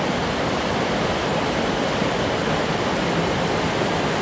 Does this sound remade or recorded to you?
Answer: recorded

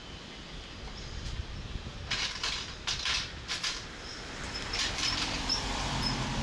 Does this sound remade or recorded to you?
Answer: remade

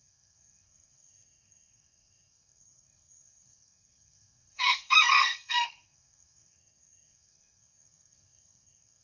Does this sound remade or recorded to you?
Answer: remade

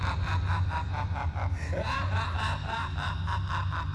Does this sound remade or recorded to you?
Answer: recorded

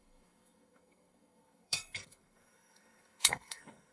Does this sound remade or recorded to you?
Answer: remade